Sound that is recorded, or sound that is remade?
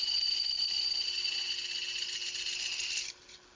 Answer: recorded